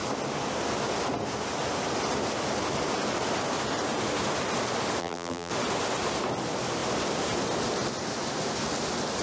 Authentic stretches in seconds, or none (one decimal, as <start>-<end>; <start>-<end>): 0.0-5.0; 5.5-9.2